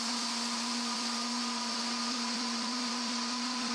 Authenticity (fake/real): fake